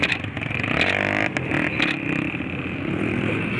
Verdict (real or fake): real